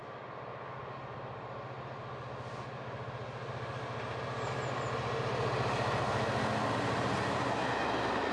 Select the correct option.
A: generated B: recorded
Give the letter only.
B